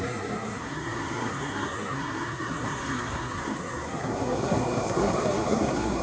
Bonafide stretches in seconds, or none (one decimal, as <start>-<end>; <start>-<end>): none

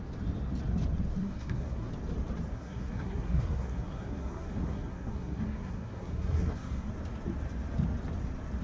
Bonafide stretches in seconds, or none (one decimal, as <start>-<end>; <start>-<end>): 0.0-1.2; 1.9-2.5; 6.9-8.6